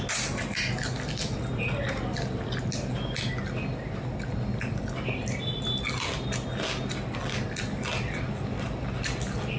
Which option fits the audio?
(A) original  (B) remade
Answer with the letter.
A